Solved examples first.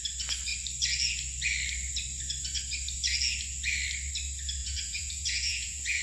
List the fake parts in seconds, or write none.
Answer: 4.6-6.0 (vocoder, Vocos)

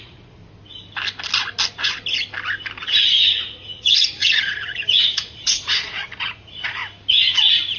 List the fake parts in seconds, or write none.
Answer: 0.0-0.4 (vocoder, Vocos); 2.8-6.8

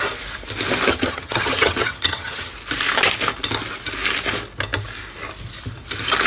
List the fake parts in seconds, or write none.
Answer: 0.9-2.5 (vocoder, HiFi-GAN)

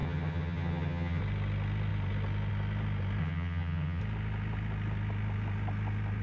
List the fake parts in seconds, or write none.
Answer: 0.0-1.2 (vocoder, HiFi-GAN); 3.2-4.0

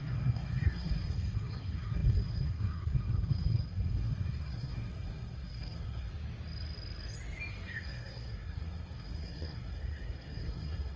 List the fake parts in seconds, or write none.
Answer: 0.0-6.1 (codec, SNAC); 7.5-11.0